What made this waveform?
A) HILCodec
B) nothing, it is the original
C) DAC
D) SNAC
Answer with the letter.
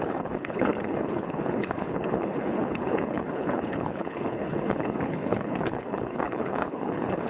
A